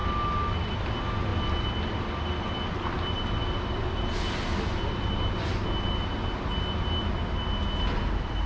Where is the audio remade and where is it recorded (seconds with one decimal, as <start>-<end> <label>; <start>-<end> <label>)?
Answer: 0.0-8.5 recorded